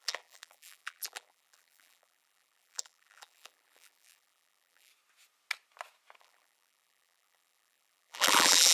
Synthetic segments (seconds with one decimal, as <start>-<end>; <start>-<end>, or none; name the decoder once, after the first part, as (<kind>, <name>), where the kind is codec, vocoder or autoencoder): 0.0-4.9 (vocoder, BigVGAN v2); 6.2-8.7